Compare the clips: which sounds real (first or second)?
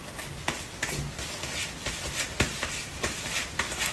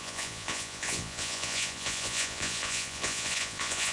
first